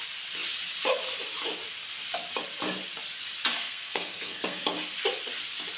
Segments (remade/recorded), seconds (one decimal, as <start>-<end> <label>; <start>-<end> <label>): 0.0-3.5 recorded; 3.5-4.6 remade; 4.6-5.8 recorded